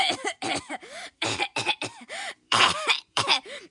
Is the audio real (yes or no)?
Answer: no